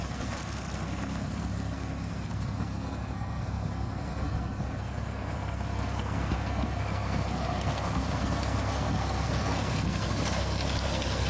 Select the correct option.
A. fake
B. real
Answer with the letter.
A